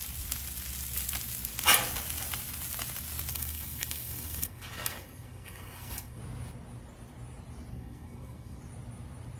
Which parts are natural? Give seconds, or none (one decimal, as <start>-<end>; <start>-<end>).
0.0-3.3; 6.2-7.7; 8.6-9.4